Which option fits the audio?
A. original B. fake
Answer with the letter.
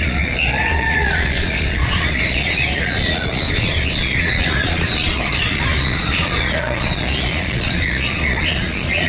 B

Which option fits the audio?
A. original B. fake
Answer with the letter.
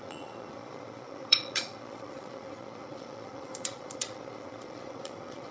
B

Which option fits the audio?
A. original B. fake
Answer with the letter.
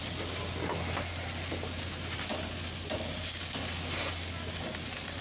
A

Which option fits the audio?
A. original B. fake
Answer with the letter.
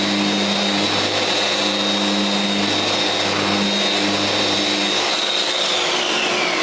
A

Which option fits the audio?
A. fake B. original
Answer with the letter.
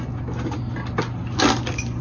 B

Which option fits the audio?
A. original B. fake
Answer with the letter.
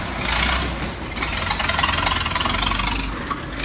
A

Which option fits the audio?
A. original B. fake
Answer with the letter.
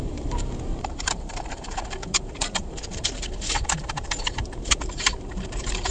B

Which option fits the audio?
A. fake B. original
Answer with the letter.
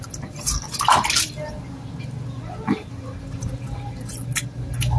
B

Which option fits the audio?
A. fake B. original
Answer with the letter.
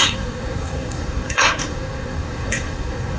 A